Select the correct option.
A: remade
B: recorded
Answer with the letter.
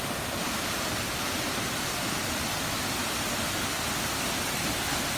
B